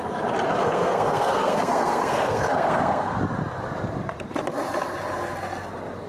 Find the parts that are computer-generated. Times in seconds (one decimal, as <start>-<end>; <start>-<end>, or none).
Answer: 0.6-3.2